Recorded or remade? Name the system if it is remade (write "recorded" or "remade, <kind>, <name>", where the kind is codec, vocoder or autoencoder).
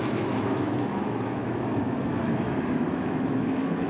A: remade, autoencoder, DAC-VAE